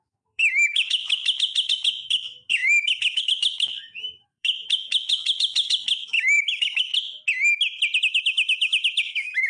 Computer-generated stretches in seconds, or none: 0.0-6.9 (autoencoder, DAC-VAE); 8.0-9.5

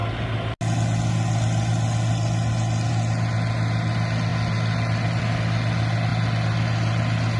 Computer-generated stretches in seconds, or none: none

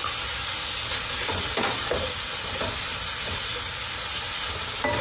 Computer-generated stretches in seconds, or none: none